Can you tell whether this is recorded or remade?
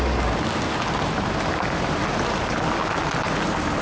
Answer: recorded